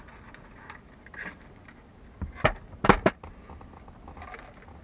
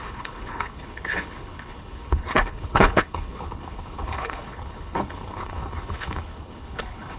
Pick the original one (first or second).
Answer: first